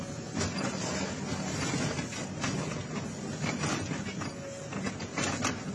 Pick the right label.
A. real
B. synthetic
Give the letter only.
A